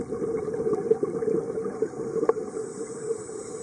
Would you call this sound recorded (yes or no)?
yes